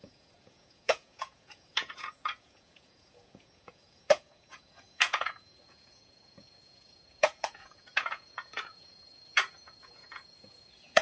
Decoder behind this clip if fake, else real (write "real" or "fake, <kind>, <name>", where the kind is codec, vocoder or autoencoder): fake, vocoder, Vocos